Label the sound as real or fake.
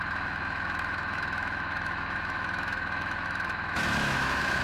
fake